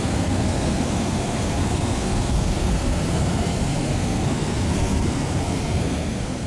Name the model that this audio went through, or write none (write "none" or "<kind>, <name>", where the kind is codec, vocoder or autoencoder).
codec, SNAC